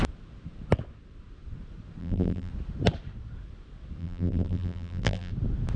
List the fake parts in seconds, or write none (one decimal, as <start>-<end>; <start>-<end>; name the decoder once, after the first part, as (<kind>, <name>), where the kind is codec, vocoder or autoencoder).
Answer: 2.0-2.5 (vocoder, BigVGAN v2); 4.0-5.3